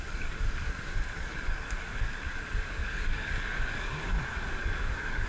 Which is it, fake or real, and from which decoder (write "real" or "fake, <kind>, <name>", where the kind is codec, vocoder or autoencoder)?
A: fake, codec, DAC